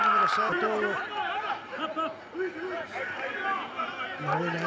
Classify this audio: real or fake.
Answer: real